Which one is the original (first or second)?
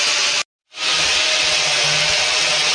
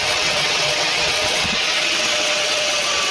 first